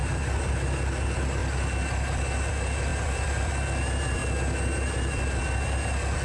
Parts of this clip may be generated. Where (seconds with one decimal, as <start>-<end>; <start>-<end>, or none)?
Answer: 0.0-0.5; 2.9-3.5